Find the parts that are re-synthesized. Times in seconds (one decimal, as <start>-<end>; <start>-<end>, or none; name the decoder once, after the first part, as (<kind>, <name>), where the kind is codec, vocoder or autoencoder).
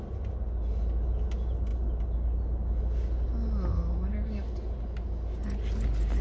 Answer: none